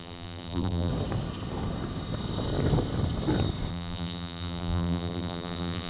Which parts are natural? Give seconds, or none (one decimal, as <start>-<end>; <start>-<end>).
0.9-3.7